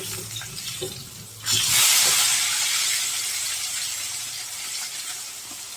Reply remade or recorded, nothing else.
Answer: recorded